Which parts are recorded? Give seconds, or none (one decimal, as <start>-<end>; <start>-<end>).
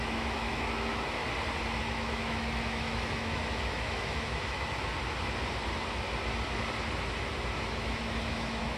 1.2-1.8; 4.9-7.3